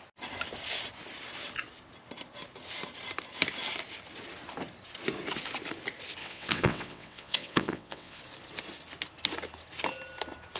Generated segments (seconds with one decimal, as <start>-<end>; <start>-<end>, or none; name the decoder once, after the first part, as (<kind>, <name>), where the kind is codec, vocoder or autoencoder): 6.2-8.2 (vocoder, WaveNeXt)